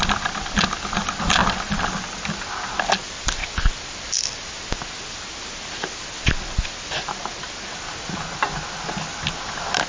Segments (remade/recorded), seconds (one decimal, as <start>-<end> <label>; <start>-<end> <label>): 0.0-9.9 recorded